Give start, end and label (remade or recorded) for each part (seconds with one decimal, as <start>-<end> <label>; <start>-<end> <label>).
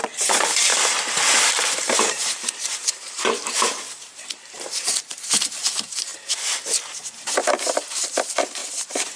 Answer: 0.0-0.7 remade; 0.7-1.4 recorded; 1.4-9.2 remade